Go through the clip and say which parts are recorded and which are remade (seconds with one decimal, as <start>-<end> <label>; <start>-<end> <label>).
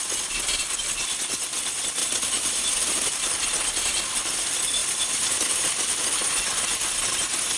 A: 0.0-2.0 recorded; 2.0-3.3 remade; 3.3-7.6 recorded